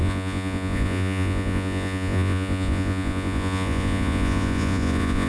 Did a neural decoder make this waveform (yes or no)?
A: yes